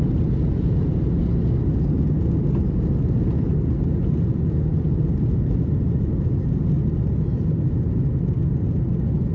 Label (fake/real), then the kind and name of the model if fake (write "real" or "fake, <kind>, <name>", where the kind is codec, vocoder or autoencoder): real